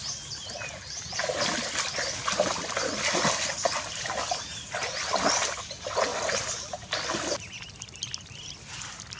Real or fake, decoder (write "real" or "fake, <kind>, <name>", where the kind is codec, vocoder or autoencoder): real